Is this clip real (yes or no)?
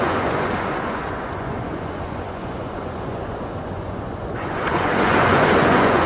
no